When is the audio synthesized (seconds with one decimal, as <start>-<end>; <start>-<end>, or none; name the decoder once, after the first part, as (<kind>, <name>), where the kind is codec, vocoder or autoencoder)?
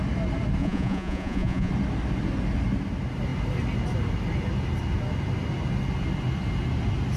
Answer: 0.6-1.7 (vocoder, Vocos)